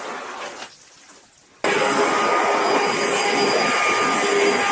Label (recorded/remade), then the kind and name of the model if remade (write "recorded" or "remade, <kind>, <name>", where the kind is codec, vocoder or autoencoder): recorded